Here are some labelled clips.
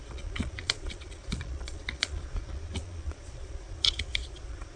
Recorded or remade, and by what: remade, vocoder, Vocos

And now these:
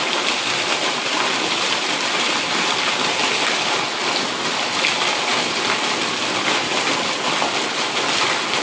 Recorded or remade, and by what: recorded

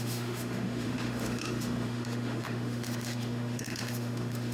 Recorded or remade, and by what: remade, autoencoder, DAC-VAE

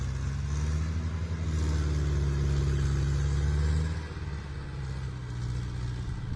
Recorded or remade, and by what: recorded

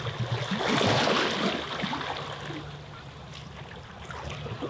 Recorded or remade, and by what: recorded